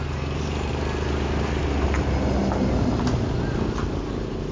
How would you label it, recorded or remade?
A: recorded